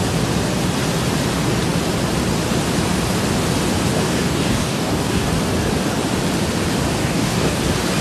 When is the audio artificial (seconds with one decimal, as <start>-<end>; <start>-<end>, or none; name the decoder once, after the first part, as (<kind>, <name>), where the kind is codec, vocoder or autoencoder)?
3.9-5.3 (codec, DAC); 7.0-7.6